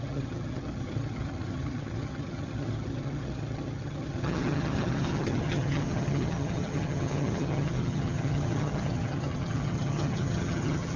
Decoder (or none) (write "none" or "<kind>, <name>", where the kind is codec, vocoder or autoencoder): vocoder, HiFi-GAN